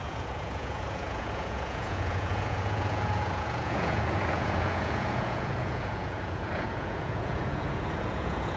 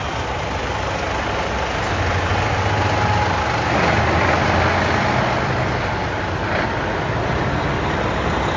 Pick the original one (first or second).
second